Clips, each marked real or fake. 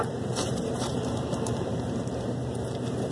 fake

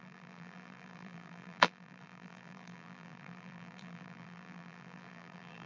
fake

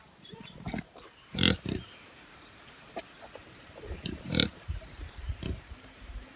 fake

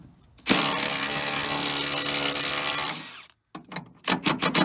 real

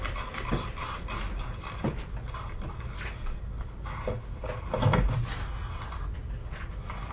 real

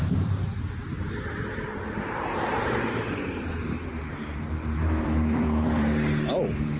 fake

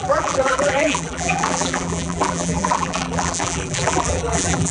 fake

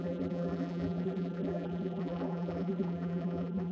fake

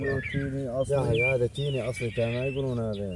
real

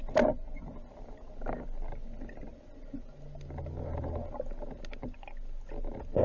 real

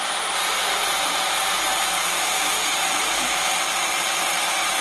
fake